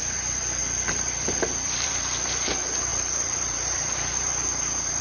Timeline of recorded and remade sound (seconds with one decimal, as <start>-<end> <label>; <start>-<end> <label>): 0.0-0.6 recorded; 0.6-1.9 remade; 1.9-2.9 recorded; 2.9-3.8 remade; 3.8-5.0 recorded